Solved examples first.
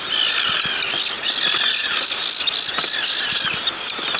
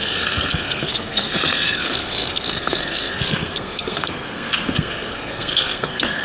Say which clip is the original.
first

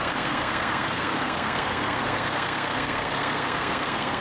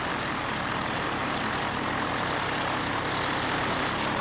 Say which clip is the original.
second